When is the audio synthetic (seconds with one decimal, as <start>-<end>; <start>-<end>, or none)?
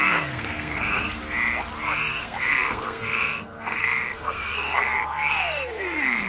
0.0-1.2; 2.2-6.3